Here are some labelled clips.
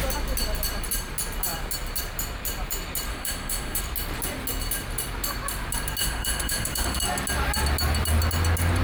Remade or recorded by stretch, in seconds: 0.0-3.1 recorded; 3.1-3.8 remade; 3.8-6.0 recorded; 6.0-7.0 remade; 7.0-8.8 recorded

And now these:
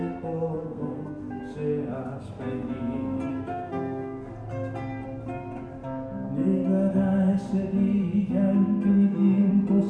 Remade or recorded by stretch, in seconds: 0.0-0.6 recorded; 0.6-1.4 remade; 1.4-3.3 recorded; 3.3-4.3 remade; 4.3-8.9 recorded; 8.9-9.5 remade; 9.5-9.9 recorded

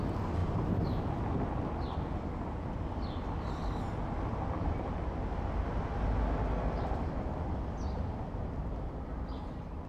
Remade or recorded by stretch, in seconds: 0.0-0.4 recorded; 0.4-1.0 remade; 1.0-9.9 recorded

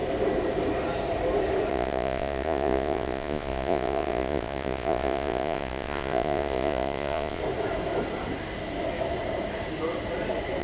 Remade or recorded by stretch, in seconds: 0.0-1.7 recorded; 1.7-7.4 remade; 7.4-10.6 recorded

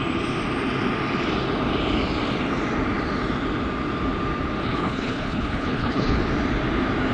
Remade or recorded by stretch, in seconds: 0.0-4.6 recorded; 4.6-6.2 remade; 6.2-7.1 recorded